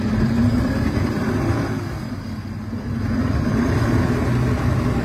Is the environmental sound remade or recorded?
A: recorded